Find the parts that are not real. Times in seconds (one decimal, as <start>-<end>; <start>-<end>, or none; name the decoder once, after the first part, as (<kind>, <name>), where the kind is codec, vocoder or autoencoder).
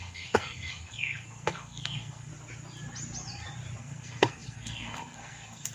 0.0-2.3 (codec, SNAC); 3.8-5.7